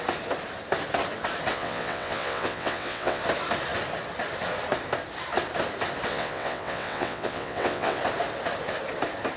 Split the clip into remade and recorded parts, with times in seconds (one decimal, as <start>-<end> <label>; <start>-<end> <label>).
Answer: 0.0-1.5 recorded; 1.5-3.2 remade; 3.2-6.1 recorded; 6.1-8.0 remade; 8.0-9.4 recorded

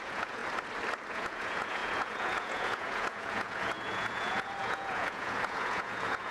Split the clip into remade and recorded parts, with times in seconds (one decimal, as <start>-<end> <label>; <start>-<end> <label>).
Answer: 0.0-0.4 remade; 0.4-1.1 recorded; 1.1-6.3 remade

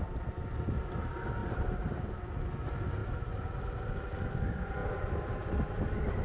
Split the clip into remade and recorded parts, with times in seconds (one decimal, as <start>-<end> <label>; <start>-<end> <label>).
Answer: 0.0-1.4 recorded; 1.4-2.2 remade; 2.2-3.0 recorded; 3.0-3.6 remade; 3.6-4.8 recorded; 4.8-5.8 remade; 5.8-6.2 recorded

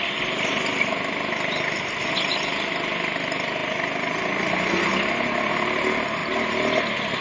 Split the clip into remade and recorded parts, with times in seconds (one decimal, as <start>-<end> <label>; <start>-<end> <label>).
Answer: 0.0-7.2 recorded